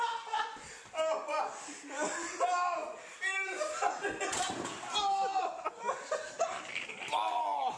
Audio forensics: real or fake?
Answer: real